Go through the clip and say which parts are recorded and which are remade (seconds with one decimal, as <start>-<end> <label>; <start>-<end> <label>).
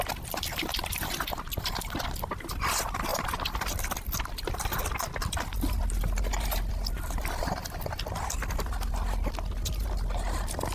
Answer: 0.0-10.7 recorded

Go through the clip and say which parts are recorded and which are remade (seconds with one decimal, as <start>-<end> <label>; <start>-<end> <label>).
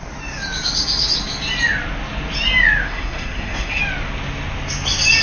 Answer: 0.0-2.9 recorded; 2.9-3.8 remade; 3.8-5.2 recorded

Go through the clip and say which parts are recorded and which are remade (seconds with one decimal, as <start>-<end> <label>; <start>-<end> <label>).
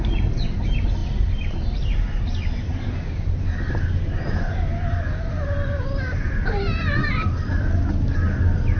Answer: 0.0-8.8 recorded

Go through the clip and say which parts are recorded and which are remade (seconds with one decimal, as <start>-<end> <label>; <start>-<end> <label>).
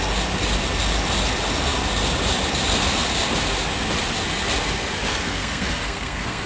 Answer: 0.0-5.1 recorded; 5.1-6.5 remade